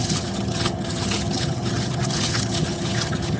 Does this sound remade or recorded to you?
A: remade